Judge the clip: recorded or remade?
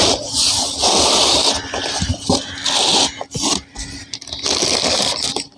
remade